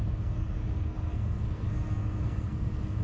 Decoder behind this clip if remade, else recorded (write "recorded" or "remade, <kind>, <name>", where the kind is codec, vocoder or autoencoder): remade, codec, SNAC